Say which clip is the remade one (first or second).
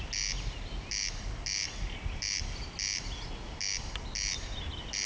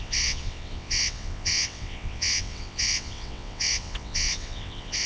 second